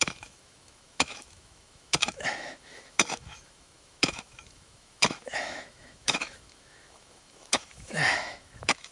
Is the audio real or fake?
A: fake